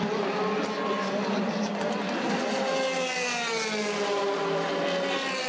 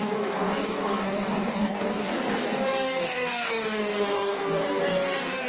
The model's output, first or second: second